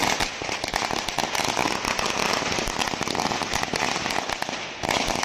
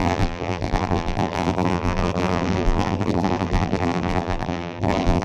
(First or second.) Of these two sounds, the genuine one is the first